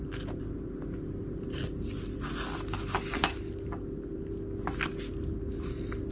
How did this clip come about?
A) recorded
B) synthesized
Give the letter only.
A